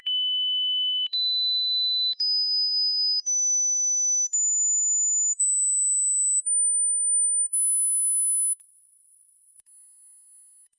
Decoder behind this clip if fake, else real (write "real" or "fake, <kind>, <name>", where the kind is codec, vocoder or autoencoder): fake, codec, DAC